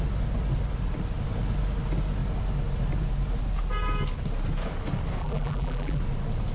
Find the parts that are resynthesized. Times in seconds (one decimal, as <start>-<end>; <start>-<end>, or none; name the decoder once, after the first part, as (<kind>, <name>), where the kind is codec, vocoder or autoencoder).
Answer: 5.2-6.0 (vocoder, BigVGAN v2)